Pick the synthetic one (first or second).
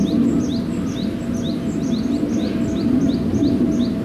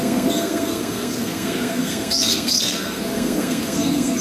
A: second